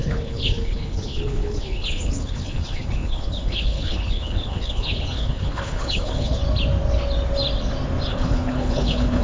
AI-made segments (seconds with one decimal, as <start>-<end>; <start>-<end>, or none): 0.0-6.4; 8.1-9.2